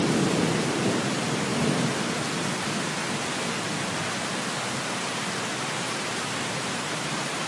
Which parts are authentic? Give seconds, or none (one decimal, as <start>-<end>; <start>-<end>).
0.0-7.5